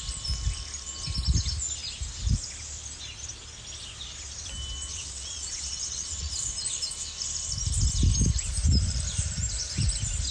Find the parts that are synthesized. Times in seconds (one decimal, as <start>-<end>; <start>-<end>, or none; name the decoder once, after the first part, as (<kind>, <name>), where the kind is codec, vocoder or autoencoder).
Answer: 4.9-6.3 (vocoder, WaveNeXt)